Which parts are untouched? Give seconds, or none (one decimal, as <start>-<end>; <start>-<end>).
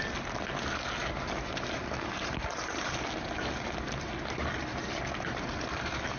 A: 0.0-6.2